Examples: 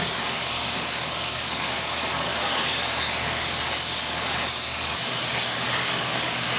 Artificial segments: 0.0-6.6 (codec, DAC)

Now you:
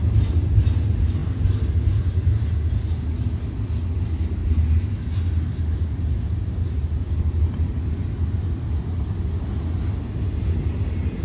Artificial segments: 4.4-8.0 (vocoder, BigVGAN v2)